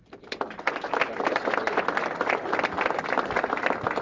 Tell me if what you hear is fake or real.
real